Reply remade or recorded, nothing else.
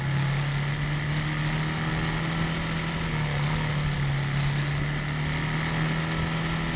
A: recorded